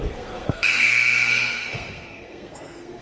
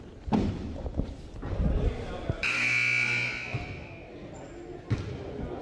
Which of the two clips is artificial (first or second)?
first